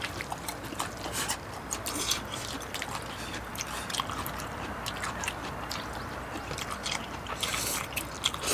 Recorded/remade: remade